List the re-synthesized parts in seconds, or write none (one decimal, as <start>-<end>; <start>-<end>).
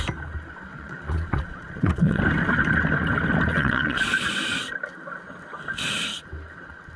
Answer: 0.7-2.2; 3.5-4.3